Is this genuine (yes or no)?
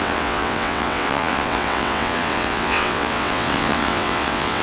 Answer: no